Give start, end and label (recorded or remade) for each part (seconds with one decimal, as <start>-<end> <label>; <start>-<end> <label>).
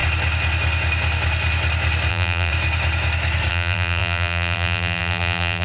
0.0-2.1 recorded; 2.1-2.5 remade; 2.5-3.5 recorded; 3.5-5.6 remade